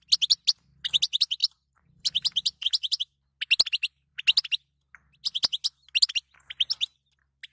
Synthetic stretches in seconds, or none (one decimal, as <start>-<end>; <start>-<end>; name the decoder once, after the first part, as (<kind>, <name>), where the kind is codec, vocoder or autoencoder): 1.4-3.0 (vocoder, BigVGAN v2)